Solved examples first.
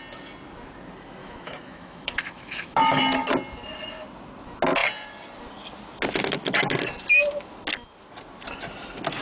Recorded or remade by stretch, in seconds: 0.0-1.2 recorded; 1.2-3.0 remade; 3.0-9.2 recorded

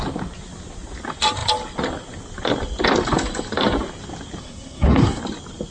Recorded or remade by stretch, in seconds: 0.0-4.4 recorded; 4.4-5.2 remade; 5.2-5.7 recorded

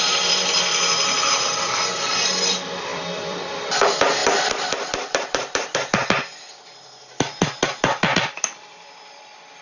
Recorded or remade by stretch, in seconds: 0.0-4.2 remade; 4.2-7.2 recorded; 7.2-9.6 remade

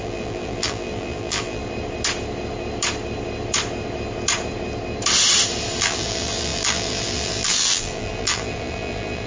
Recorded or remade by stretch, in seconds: 0.0-1.6 remade; 1.6-5.8 recorded; 5.8-9.3 remade

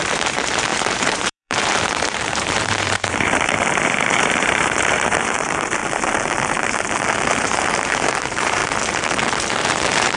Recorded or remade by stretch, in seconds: 0.0-5.8 remade; 5.8-7.3 recorded; 7.3-8.6 remade; 8.6-9.5 recorded; 9.5-10.2 remade

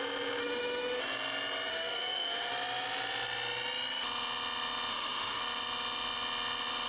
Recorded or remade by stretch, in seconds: 0.0-0.4 recorded; 0.4-1.0 remade; 1.0-1.7 recorded; 1.7-2.5 remade; 2.5-4.9 recorded; 4.9-5.4 remade; 5.4-6.9 recorded

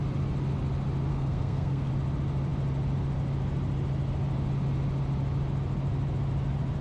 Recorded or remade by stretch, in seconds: 0.0-1.1 recorded; 1.1-1.9 remade; 1.9-6.8 recorded